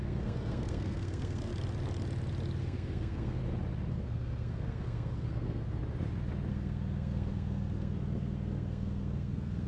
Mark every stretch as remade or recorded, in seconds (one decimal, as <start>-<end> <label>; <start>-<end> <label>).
0.0-1.5 remade; 1.5-2.6 recorded; 2.6-3.4 remade; 3.4-3.9 recorded; 3.9-5.8 remade; 5.8-6.5 recorded; 6.5-9.7 remade